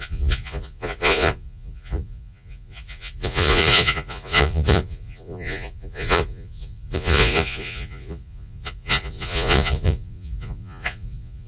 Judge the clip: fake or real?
fake